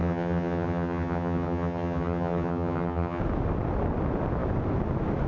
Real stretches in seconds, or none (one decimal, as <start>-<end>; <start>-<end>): 3.2-5.3